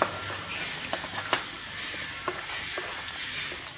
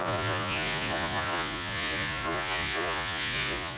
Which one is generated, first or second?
second